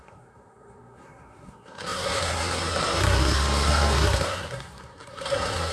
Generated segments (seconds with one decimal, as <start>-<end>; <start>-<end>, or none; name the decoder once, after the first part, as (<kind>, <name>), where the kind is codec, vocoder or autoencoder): 0.0-5.7 (codec, SNAC)